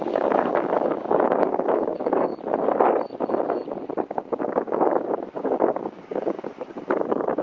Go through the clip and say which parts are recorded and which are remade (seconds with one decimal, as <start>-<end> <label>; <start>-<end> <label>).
0.0-2.3 remade; 2.3-4.1 recorded; 4.1-7.4 remade